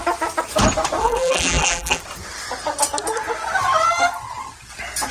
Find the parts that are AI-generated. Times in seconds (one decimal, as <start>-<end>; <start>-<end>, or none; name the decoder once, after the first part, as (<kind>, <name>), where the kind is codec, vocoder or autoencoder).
1.0-2.0 (vocoder, BigVGAN v2)